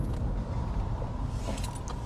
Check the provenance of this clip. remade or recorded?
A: recorded